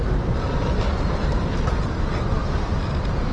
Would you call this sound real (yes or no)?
yes